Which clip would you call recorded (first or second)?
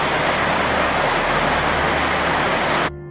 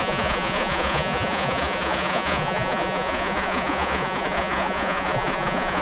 first